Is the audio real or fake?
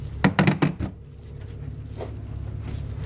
real